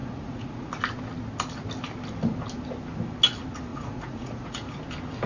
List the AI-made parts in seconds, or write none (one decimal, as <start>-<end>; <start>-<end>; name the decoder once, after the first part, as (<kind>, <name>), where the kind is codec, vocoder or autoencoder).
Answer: 0.0-0.7 (vocoder, Vocos); 3.7-4.8